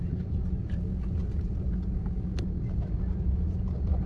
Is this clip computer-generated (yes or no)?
no